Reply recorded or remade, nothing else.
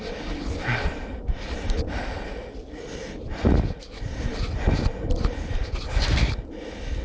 recorded